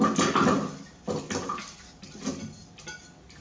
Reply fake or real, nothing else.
real